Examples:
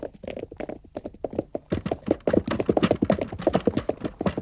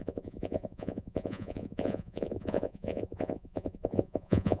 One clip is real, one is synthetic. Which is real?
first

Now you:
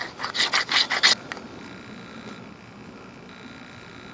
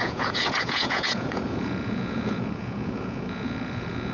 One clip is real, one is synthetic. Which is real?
first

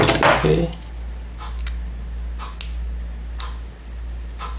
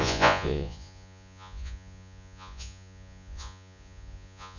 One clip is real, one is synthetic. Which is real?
first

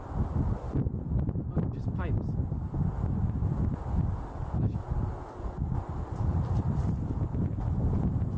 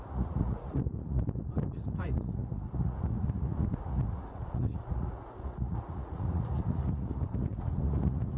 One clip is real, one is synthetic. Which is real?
first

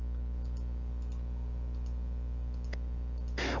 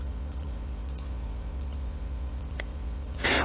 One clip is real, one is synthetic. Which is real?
first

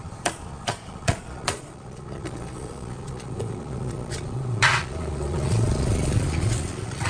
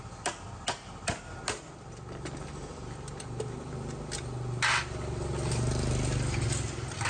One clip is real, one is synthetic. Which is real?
second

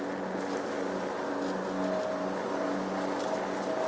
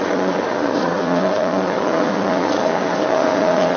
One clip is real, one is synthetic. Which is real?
first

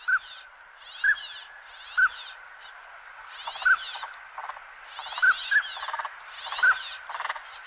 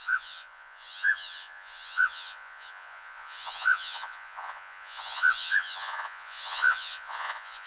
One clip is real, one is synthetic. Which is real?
first